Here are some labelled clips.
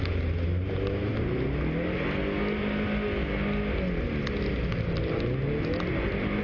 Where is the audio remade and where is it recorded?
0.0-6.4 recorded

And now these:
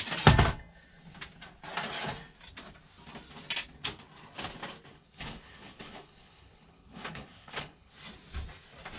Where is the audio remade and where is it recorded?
0.0-4.9 recorded; 4.9-7.9 remade; 7.9-9.0 recorded

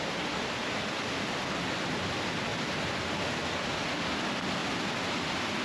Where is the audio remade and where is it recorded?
0.0-5.6 recorded

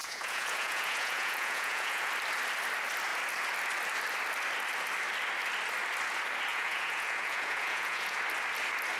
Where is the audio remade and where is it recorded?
0.0-2.1 remade; 2.1-6.5 recorded; 6.5-8.2 remade; 8.2-9.0 recorded